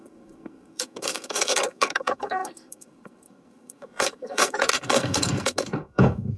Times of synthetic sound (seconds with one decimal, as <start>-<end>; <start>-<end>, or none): 0.0-6.4